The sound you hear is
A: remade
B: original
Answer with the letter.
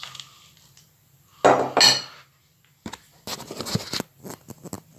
B